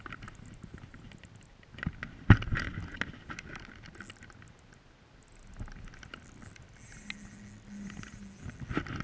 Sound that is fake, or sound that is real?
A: real